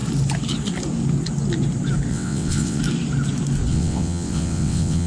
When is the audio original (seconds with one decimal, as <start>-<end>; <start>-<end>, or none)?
0.0-2.1; 2.8-3.7